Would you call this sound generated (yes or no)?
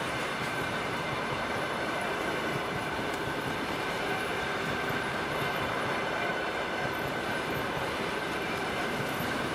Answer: yes